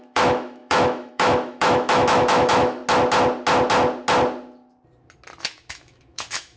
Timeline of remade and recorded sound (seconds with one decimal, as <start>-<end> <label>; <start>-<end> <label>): 0.0-2.8 remade; 2.8-5.4 recorded; 5.4-6.6 remade